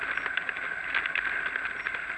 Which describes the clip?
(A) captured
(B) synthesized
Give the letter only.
A